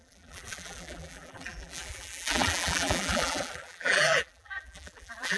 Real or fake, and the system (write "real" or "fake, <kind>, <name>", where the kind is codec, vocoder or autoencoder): fake, vocoder, BigVGAN v2